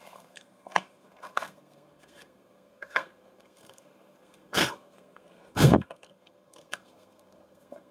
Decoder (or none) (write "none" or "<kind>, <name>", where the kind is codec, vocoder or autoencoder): codec, SNAC